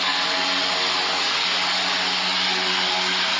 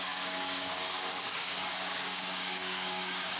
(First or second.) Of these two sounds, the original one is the first